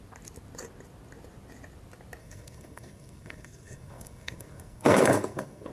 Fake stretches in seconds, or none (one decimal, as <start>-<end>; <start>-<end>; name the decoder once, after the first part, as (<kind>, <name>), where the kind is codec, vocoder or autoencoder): 2.2-5.7 (codec, SNAC)